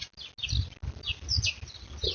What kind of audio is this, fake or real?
real